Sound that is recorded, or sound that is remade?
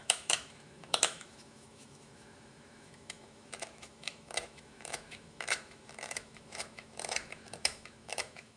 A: remade